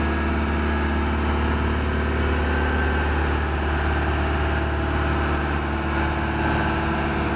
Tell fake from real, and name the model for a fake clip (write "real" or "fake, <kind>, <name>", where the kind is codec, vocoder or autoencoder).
real